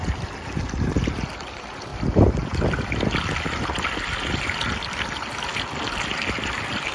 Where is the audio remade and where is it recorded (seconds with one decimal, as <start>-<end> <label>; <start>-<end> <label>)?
0.0-6.9 recorded